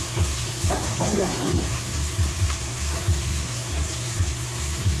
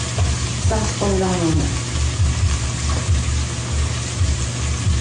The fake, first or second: first